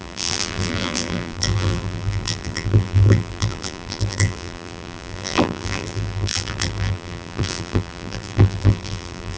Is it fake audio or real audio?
fake